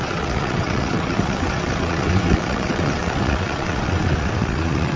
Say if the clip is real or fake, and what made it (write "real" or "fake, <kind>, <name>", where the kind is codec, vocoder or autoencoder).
fake, vocoder, WaveNeXt